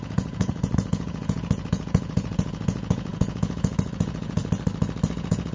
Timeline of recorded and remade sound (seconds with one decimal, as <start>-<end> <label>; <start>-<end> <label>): 0.0-4.4 remade; 4.4-5.1 recorded; 5.1-5.5 remade